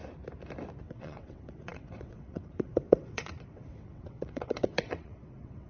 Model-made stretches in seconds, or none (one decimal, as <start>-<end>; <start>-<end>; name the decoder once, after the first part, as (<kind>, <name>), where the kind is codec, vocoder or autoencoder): 0.8-5.7 (vocoder, WaveNeXt)